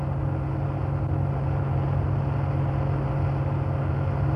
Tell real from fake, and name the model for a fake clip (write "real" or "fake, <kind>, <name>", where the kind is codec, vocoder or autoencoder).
real